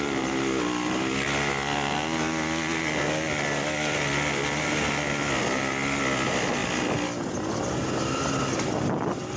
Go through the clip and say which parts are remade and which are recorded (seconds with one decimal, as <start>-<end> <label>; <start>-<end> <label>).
0.0-9.4 recorded